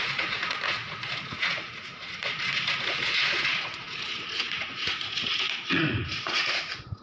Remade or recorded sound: remade